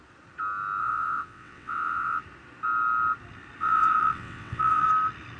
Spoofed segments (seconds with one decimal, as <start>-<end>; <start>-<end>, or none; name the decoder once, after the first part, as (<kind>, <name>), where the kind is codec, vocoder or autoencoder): 0.8-2.2 (vocoder, WaveNeXt); 3.6-4.9

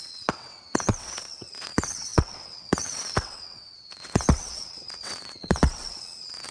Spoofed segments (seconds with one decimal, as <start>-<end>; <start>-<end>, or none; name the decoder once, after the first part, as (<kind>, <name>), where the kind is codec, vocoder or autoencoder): 0.0-6.5 (vocoder, WaveNeXt)